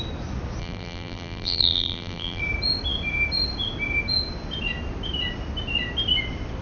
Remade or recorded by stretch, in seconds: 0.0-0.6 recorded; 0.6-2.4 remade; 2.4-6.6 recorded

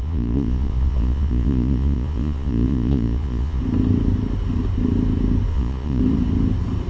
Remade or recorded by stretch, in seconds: 0.0-3.6 remade; 3.6-5.5 recorded; 5.5-6.0 remade; 6.0-6.9 recorded

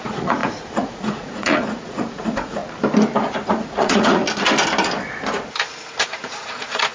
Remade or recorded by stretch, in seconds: 0.0-2.6 remade; 2.6-3.5 recorded; 3.5-4.2 remade; 4.2-5.9 recorded; 5.9-6.9 remade

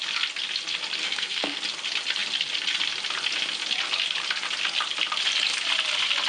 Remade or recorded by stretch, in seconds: 0.0-1.0 recorded; 1.0-1.6 remade; 1.6-6.3 recorded

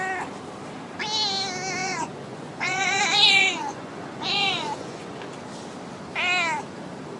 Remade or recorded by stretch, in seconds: 0.0-1.8 recorded; 1.8-5.3 remade; 5.3-7.2 recorded

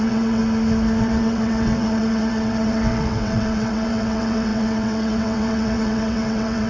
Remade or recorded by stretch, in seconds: 0.0-0.4 remade; 0.4-1.0 recorded; 1.0-6.7 remade